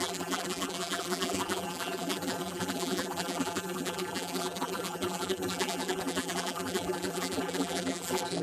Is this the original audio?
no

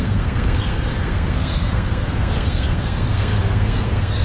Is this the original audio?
no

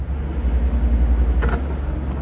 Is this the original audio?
yes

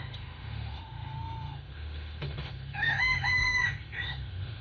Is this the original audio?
no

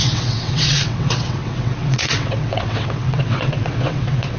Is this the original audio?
no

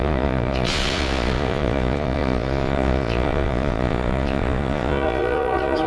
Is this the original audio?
no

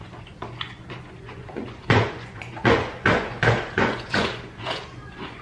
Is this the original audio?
no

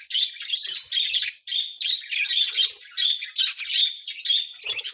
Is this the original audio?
yes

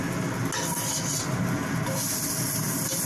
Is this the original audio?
yes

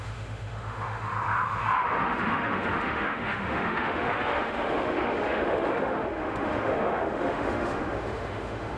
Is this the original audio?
no